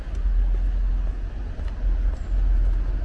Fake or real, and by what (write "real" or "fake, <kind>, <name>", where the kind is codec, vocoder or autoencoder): real